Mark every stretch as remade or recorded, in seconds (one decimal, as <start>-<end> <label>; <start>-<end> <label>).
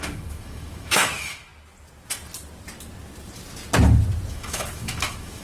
0.0-1.5 remade; 1.5-4.3 recorded; 4.3-5.4 remade